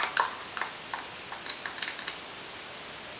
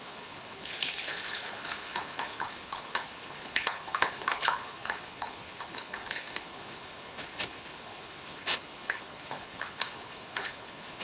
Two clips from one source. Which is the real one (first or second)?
first